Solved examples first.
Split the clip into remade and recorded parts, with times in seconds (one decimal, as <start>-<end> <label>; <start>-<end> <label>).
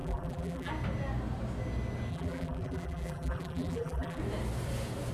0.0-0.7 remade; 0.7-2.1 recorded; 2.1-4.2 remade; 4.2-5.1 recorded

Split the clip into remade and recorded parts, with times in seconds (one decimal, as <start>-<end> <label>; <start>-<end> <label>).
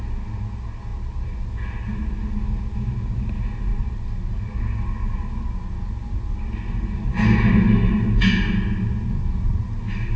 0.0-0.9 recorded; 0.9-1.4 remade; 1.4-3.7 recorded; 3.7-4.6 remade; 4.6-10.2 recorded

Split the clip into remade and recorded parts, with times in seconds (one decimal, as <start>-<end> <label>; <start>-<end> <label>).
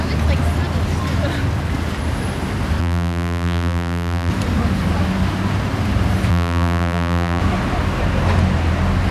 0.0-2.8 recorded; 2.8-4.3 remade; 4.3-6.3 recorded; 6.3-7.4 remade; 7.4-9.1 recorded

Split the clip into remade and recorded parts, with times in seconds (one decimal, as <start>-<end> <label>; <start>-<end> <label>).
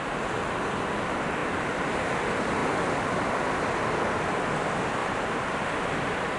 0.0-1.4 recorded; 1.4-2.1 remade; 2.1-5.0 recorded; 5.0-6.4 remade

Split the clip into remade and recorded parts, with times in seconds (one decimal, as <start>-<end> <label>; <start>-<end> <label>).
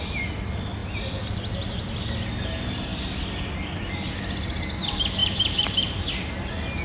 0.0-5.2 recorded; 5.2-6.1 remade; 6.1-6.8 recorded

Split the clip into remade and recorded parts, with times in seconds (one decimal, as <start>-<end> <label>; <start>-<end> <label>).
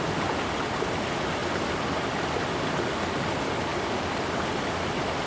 0.0-5.3 recorded